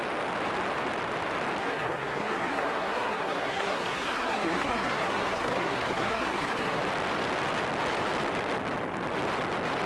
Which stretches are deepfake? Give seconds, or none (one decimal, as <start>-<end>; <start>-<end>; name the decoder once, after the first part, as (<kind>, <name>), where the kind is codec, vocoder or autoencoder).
1.6-6.8 (codec, SNAC)